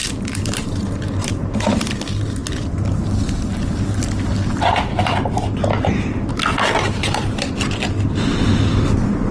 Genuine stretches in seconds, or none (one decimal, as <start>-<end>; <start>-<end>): 1.9-9.3